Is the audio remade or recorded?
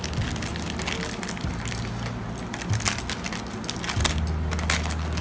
recorded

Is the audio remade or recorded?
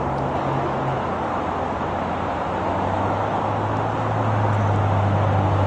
recorded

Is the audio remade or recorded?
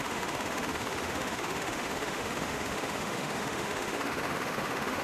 remade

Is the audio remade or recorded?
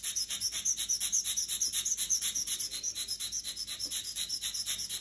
recorded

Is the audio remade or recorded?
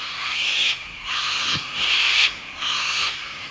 remade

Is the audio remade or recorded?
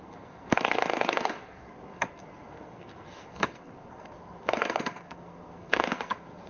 remade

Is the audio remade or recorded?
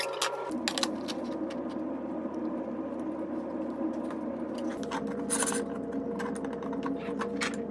recorded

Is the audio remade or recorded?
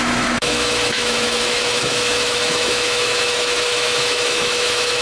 remade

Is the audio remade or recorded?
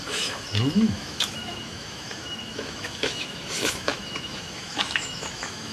remade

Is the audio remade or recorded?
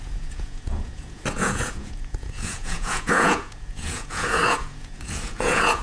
remade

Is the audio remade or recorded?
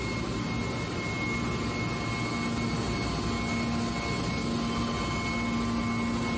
recorded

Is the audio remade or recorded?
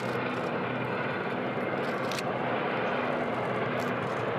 recorded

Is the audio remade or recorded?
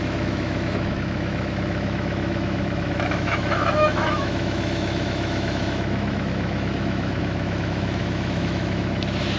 remade